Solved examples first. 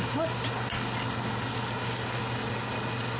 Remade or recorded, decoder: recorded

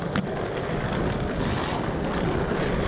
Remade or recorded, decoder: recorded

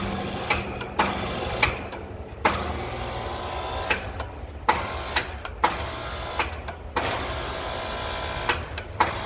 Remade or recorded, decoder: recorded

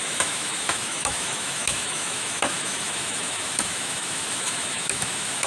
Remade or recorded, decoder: remade, autoencoder, DAC-VAE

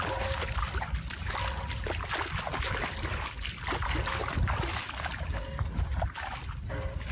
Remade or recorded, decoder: recorded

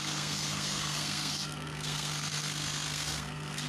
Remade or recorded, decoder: remade, codec, SNAC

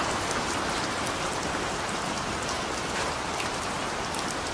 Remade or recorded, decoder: recorded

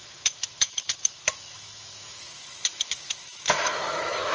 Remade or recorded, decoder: remade, autoencoder, DAC-VAE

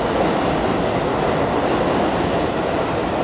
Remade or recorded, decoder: recorded